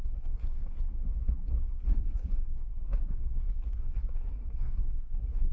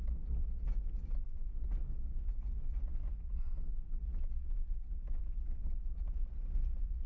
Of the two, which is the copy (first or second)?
first